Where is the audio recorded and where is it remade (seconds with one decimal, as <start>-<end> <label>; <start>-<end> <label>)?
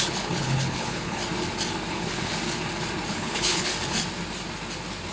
0.0-1.2 remade; 1.2-1.9 recorded; 1.9-2.3 remade; 2.3-3.1 recorded; 3.1-3.7 remade; 3.7-5.1 recorded